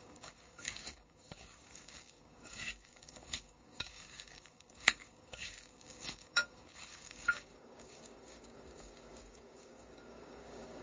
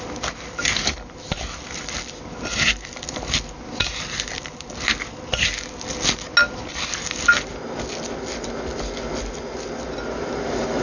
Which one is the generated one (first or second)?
first